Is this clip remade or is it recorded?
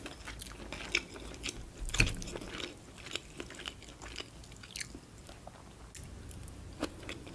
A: recorded